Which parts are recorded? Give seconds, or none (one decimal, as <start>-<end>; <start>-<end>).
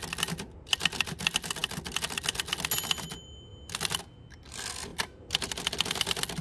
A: 0.0-6.4